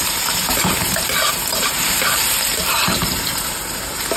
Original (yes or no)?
no